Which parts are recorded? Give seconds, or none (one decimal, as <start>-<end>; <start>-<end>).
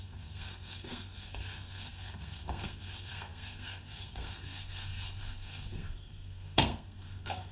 none